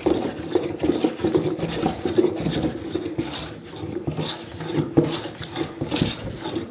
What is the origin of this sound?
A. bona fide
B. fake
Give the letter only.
A